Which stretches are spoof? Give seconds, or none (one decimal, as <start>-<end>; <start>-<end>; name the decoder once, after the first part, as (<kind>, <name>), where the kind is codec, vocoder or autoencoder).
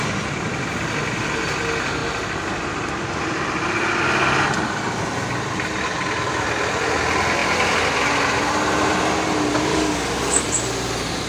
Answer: 9.7-10.4 (codec, DAC)